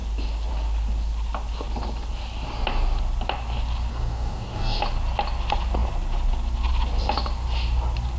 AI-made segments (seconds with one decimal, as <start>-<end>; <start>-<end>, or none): 3.9-4.8